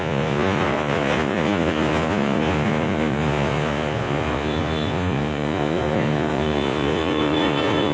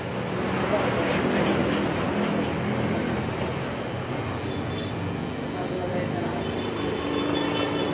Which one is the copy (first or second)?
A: first